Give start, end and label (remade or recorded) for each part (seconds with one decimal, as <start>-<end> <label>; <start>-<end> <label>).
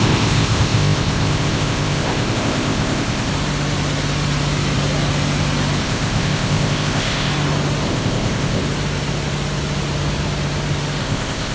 0.0-3.3 remade; 3.3-5.8 recorded; 5.8-7.3 remade; 7.3-7.9 recorded; 7.9-8.6 remade; 8.6-11.0 recorded; 11.0-11.5 remade